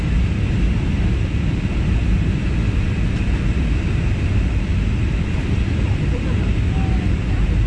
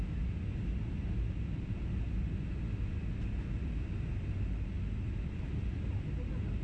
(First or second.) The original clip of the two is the second